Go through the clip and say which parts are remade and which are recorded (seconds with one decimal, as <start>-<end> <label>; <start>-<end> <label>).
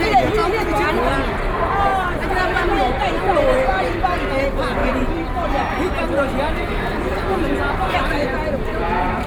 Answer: 0.0-1.9 recorded; 1.9-4.0 remade; 4.0-4.8 recorded; 4.8-8.8 remade; 8.8-9.3 recorded